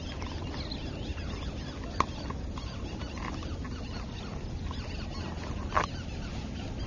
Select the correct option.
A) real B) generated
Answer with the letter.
A